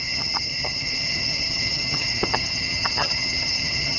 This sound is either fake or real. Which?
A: fake